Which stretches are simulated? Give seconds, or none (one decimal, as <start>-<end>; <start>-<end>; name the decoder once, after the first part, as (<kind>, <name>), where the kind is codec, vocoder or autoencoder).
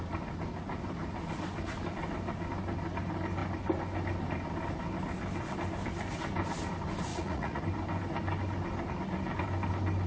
7.1-7.6 (vocoder, Vocos)